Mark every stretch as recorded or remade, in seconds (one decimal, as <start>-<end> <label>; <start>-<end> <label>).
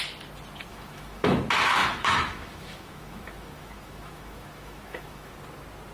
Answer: 0.0-0.7 recorded; 0.7-1.4 remade; 1.4-1.8 recorded; 1.8-5.3 remade; 5.3-5.9 recorded